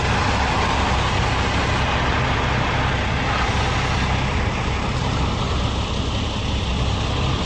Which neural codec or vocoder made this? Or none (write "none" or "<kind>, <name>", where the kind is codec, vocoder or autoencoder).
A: none